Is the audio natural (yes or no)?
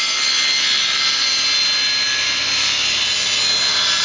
yes